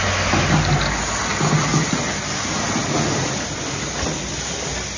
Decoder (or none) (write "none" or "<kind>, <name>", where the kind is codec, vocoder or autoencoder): none